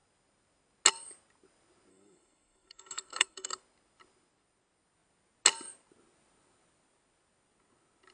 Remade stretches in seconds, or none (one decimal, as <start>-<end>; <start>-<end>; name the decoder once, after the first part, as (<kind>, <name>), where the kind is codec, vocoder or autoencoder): 1.9-3.6 (codec, SNAC)

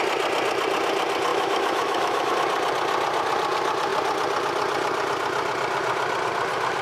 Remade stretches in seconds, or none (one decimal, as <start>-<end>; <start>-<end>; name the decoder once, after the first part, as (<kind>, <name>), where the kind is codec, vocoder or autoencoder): 1.3-2.3 (autoencoder, DAC-VAE)

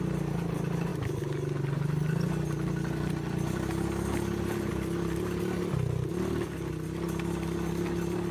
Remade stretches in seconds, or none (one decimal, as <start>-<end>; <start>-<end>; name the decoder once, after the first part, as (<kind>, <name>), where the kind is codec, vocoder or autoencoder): none

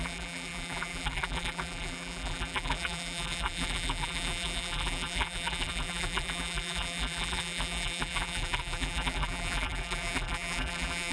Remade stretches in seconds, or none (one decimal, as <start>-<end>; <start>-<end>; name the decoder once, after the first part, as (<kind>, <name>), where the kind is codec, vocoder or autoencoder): 0.0-11.1 (vocoder, BigVGAN v2)

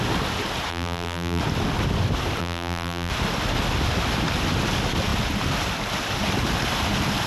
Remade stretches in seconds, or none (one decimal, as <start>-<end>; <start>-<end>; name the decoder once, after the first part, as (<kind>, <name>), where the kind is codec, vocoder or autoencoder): 0.7-1.4 (vocoder, BigVGAN v2); 2.4-3.1

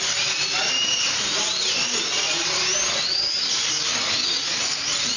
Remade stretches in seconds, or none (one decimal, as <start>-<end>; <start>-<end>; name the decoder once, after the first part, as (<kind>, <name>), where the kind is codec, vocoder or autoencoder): none

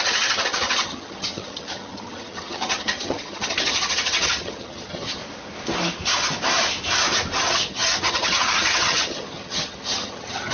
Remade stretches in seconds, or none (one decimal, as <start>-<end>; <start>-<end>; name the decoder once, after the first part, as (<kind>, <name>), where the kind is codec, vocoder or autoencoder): 0.0-5.2 (vocoder, HiFi-GAN); 7.4-10.5